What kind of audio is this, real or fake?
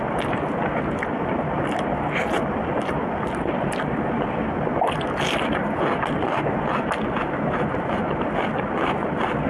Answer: real